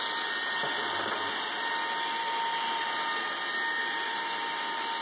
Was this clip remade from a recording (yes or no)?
no